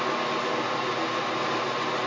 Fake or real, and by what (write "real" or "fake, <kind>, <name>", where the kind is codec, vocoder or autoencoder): real